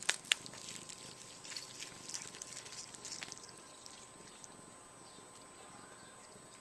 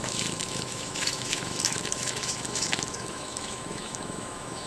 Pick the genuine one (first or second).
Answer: first